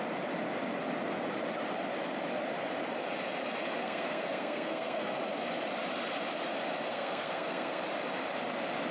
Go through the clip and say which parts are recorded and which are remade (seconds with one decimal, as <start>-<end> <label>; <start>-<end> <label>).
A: 0.0-3.8 recorded; 3.8-5.2 remade; 5.2-6.9 recorded; 6.9-7.8 remade; 7.8-8.9 recorded

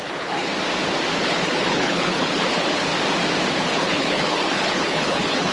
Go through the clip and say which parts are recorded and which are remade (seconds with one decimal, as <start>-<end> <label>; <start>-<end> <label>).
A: 0.0-0.5 remade; 0.5-1.2 recorded; 1.2-2.9 remade; 2.9-3.5 recorded; 3.5-5.5 remade

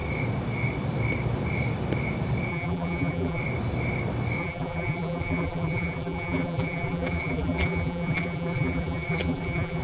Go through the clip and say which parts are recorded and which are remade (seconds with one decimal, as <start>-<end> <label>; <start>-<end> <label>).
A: 0.0-2.5 recorded; 2.5-3.4 remade; 3.4-4.4 recorded; 4.4-9.8 remade

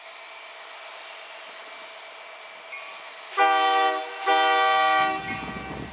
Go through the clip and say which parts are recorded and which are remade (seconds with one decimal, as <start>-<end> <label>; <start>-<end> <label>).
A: 0.0-5.9 recorded